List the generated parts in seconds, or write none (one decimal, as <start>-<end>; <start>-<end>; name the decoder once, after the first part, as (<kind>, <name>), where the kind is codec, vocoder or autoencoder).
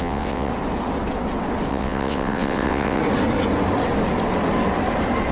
0.0-0.5 (vocoder, WaveNeXt); 1.7-3.0